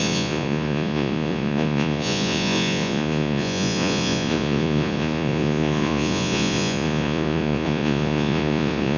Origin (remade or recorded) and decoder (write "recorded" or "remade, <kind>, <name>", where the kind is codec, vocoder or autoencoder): remade, vocoder, Vocos